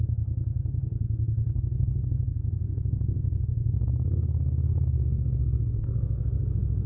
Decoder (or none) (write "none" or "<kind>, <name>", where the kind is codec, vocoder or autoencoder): codec, SNAC